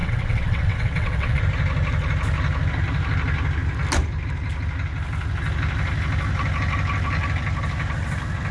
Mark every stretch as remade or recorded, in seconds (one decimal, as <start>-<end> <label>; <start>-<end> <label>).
0.0-1.4 remade; 1.4-8.5 recorded